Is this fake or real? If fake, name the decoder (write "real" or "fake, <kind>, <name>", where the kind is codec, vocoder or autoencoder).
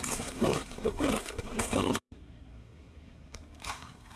fake, codec, SNAC